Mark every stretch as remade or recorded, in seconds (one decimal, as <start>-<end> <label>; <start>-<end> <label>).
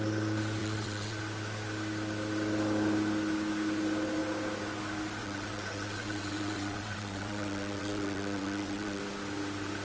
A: 0.0-0.6 recorded; 0.6-1.2 remade; 1.2-5.2 recorded; 5.2-9.0 remade; 9.0-9.8 recorded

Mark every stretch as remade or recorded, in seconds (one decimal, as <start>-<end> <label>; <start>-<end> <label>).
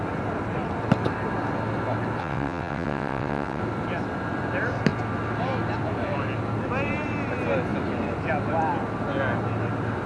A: 0.0-2.2 recorded; 2.2-3.6 remade; 3.6-10.1 recorded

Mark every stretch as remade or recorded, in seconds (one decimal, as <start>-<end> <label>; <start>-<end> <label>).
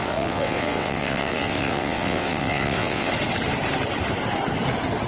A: 0.0-3.1 remade; 3.1-5.1 recorded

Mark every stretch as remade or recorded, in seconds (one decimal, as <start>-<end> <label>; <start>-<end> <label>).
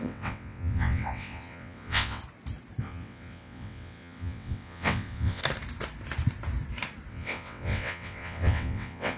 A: 0.0-2.2 remade; 2.2-2.8 recorded; 2.8-5.4 remade; 5.4-7.1 recorded; 7.1-9.2 remade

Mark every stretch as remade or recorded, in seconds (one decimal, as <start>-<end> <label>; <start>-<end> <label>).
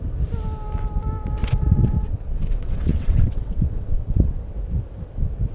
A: 0.0-1.4 recorded; 1.4-4.3 remade; 4.3-5.5 recorded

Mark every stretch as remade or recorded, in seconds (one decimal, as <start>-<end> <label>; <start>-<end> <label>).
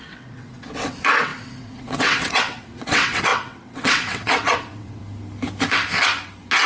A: 0.0-5.0 remade; 5.0-6.7 recorded